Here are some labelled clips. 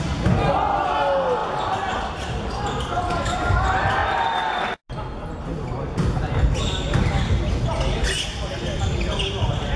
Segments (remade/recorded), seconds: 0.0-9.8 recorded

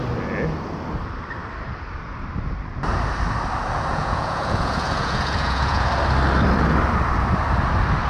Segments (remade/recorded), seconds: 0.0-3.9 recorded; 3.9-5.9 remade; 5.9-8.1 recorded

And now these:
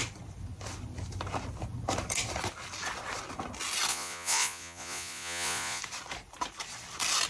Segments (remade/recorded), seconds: 0.0-3.9 recorded; 3.9-5.8 remade; 5.8-7.3 recorded

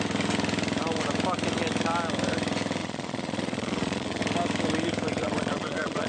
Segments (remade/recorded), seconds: 0.0-2.8 recorded; 2.8-4.2 remade; 4.2-5.2 recorded; 5.2-6.1 remade

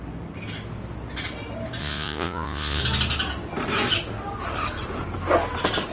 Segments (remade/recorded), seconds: 0.0-1.8 recorded; 1.8-2.8 remade; 2.8-5.9 recorded